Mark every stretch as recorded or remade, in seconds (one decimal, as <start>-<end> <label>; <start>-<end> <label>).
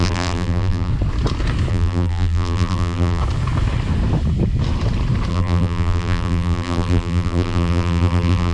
0.0-0.9 remade; 0.9-1.7 recorded; 1.7-3.2 remade; 3.2-5.3 recorded; 5.3-8.5 remade